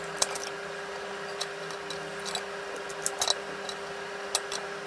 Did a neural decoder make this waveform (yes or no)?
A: no